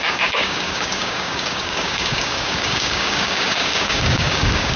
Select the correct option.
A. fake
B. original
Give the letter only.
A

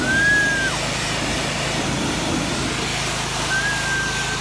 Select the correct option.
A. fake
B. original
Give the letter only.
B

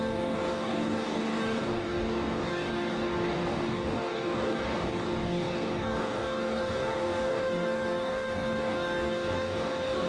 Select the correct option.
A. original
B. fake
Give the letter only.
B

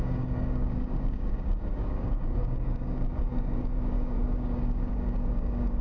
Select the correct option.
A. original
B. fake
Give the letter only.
B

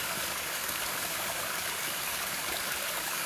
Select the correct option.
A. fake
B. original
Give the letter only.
A